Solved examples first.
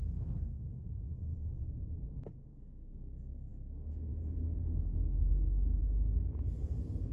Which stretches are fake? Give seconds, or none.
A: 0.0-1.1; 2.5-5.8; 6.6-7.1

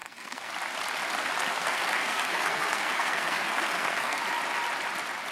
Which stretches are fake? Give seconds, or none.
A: 0.0-0.5; 1.5-4.2

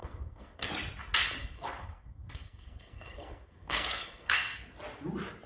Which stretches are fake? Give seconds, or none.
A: 0.0-0.7; 1.4-4.7

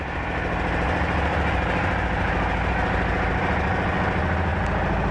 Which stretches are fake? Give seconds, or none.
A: none

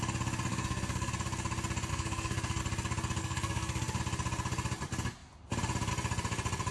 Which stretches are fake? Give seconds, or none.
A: 0.5-1.1; 1.9-2.6; 3.2-4.0